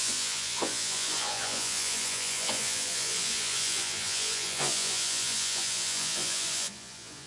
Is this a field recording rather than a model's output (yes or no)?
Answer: no